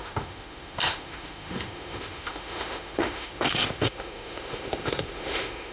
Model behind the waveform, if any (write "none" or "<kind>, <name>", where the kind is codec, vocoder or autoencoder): autoencoder, DAC-VAE